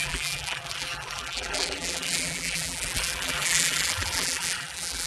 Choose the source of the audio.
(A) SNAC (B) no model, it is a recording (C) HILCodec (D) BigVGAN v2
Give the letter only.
D